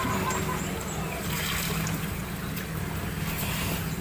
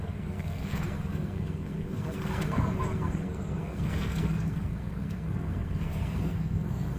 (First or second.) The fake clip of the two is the second